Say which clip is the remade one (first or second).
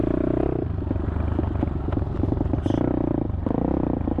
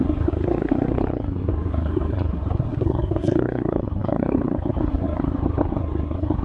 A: second